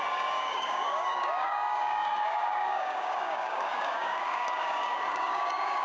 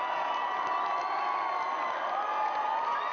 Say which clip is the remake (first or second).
first